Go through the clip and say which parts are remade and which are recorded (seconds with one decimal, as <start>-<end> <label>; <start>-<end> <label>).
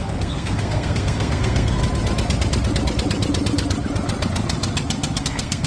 0.0-1.8 remade; 1.8-5.2 recorded; 5.2-5.7 remade